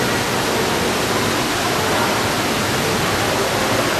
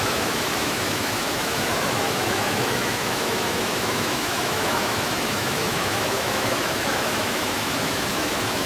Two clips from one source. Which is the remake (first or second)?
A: second